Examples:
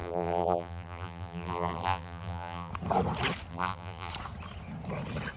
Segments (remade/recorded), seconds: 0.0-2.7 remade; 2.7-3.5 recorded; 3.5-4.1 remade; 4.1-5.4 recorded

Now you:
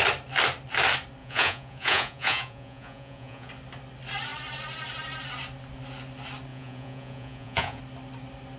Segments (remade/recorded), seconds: 0.0-1.2 recorded; 1.2-3.5 remade; 3.5-6.5 recorded; 6.5-7.8 remade; 7.8-8.6 recorded

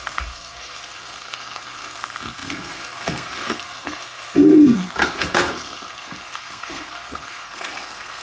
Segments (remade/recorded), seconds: 0.0-8.2 remade

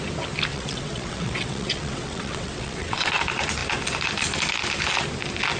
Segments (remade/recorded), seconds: 0.0-0.5 recorded; 0.5-3.2 remade; 3.2-5.6 recorded

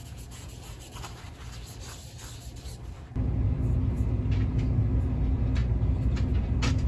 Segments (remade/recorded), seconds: 0.0-0.8 remade; 0.8-6.9 recorded

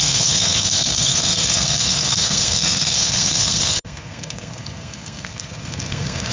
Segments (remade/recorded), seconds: 0.0-6.3 remade